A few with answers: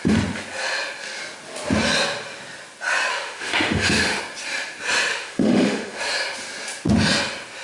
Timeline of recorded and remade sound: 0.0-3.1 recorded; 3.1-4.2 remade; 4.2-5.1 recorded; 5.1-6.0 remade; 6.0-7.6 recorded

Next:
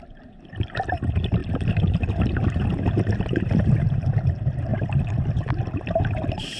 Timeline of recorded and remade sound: 0.0-1.4 remade; 1.4-3.4 recorded; 3.4-4.7 remade; 4.7-5.5 recorded; 5.5-6.6 remade

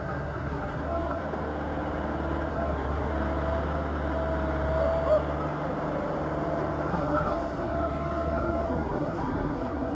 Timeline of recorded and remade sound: 0.0-1.2 remade; 1.2-2.5 recorded; 2.5-3.1 remade; 3.1-6.9 recorded; 6.9-9.9 remade